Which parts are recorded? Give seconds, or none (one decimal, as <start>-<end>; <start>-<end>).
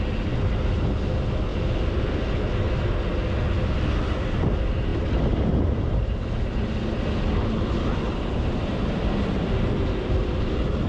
0.0-10.9